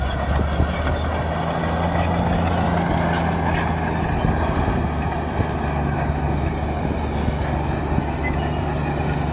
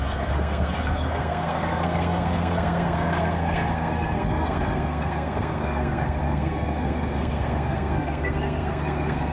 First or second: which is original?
first